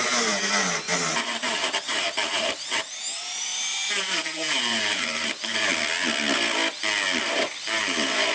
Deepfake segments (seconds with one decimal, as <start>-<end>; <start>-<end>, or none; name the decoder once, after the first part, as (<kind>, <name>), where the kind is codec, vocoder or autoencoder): 0.0-5.7 (vocoder, BigVGAN v2); 7.3-8.3